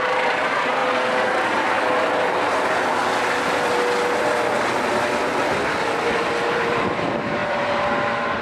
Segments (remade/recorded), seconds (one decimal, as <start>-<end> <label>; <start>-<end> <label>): 0.0-0.8 remade; 0.8-2.0 recorded; 2.0-3.0 remade; 3.0-6.5 recorded; 6.5-8.4 remade

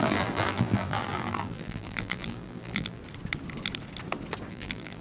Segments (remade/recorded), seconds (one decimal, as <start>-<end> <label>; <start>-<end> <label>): 0.0-3.0 remade; 3.0-4.5 recorded; 4.5-5.0 remade

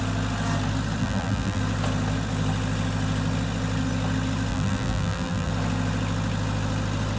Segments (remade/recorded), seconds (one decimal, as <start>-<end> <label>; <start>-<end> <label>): 0.0-1.0 recorded; 1.0-1.6 remade; 1.6-4.5 recorded; 4.5-5.5 remade; 5.5-7.2 recorded

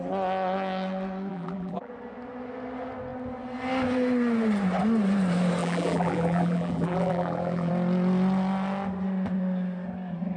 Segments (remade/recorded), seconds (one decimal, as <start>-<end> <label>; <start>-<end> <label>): 0.0-1.3 recorded; 1.3-1.9 remade; 1.9-5.6 recorded; 5.6-7.7 remade; 7.7-10.4 recorded

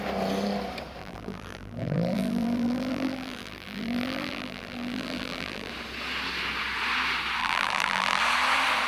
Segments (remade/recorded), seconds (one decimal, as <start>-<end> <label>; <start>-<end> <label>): 0.0-1.0 recorded; 1.0-5.7 remade; 5.7-7.4 recorded; 7.4-8.2 remade; 8.2-8.9 recorded

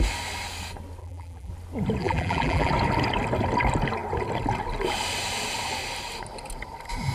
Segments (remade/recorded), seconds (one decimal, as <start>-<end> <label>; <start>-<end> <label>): 0.0-1.0 recorded; 1.0-1.5 remade; 1.5-2.0 recorded; 2.0-2.7 remade; 2.7-7.1 recorded

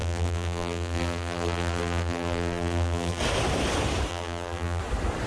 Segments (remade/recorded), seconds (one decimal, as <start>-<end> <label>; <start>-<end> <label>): 0.0-3.2 remade; 3.2-4.1 recorded; 4.1-4.8 remade; 4.8-5.3 recorded